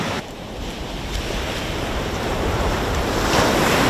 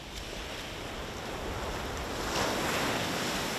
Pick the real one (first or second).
second